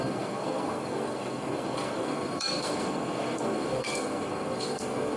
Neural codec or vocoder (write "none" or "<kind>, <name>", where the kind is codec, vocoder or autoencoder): codec, SNAC